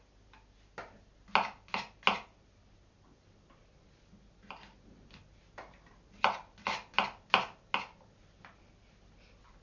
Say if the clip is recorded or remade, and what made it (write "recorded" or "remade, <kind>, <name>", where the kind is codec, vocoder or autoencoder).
recorded